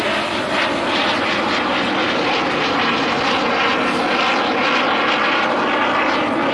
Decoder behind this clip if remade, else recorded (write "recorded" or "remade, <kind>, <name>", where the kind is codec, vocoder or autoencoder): recorded